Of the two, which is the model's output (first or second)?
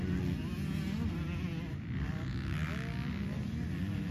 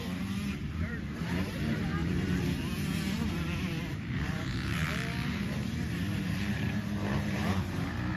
second